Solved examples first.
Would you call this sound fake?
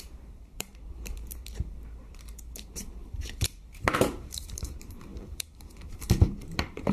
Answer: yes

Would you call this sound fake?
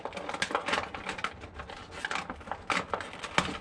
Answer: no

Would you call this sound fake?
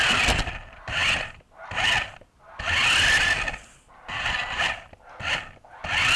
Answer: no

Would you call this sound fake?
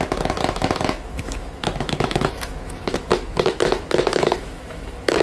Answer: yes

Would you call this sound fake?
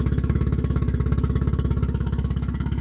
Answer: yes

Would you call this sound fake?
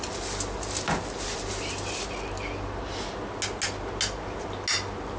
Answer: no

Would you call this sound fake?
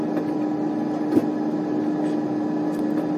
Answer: no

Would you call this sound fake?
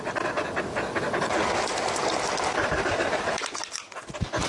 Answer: no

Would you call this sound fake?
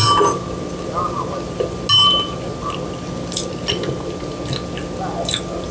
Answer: no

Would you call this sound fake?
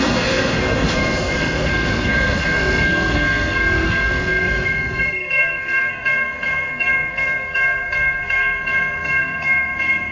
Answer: yes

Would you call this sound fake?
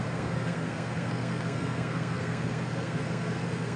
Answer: yes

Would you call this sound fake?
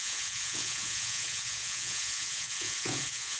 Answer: yes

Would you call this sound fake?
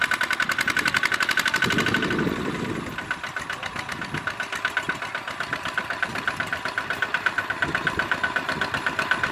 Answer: no